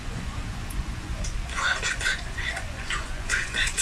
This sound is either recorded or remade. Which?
remade